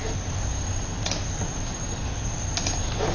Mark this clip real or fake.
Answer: fake